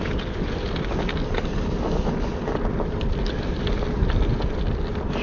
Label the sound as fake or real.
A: real